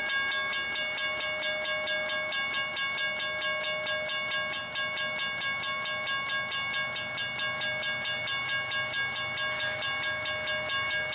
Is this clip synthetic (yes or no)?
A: no